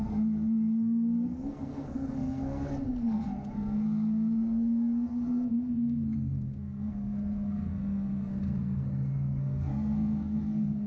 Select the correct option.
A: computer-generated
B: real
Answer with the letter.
A